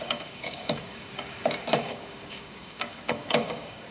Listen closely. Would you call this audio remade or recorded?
remade